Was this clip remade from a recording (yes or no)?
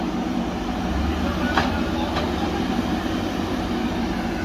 no